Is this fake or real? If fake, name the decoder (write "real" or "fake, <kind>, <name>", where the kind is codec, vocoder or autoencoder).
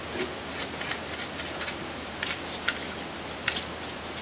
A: real